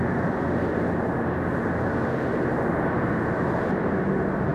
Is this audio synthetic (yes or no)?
no